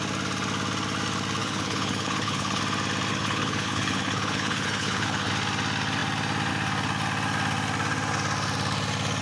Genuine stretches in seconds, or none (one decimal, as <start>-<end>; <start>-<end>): 0.0-1.4; 2.6-3.1; 5.3-9.2